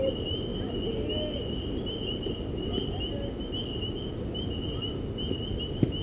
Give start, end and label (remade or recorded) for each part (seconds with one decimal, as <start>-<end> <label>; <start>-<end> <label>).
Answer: 0.0-6.0 recorded